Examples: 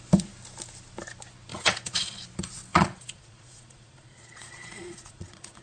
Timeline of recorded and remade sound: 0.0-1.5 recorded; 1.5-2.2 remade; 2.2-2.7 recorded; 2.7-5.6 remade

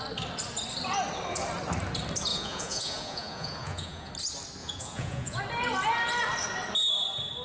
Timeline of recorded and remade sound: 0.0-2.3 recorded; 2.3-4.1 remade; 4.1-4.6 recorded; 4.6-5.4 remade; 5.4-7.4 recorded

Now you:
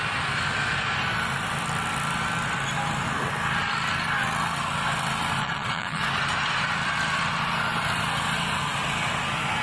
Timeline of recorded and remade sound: 0.0-5.4 recorded; 5.4-6.0 remade; 6.0-9.6 recorded

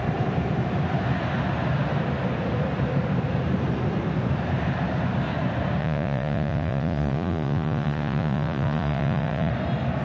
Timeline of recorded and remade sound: 0.0-5.8 recorded; 5.8-9.5 remade; 9.5-10.0 recorded

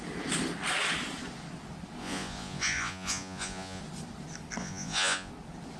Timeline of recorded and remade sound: 0.0-2.0 recorded; 2.0-3.8 remade; 3.8-4.6 recorded; 4.6-5.3 remade; 5.3-5.8 recorded

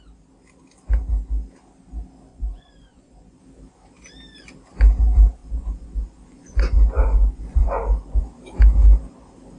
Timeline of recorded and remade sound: 0.0-2.3 recorded; 2.3-3.4 remade; 3.4-5.4 recorded; 5.4-8.2 remade; 8.2-9.6 recorded